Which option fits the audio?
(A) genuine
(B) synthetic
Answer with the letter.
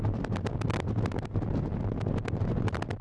A